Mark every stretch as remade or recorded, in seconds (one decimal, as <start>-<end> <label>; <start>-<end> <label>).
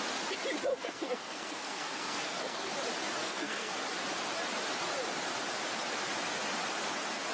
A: 0.0-0.7 recorded; 0.7-2.7 remade; 2.7-3.2 recorded; 3.2-3.7 remade; 3.7-7.3 recorded